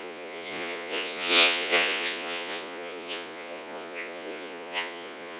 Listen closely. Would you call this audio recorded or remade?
remade